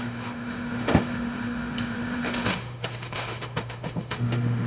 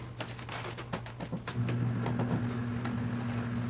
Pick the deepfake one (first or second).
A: first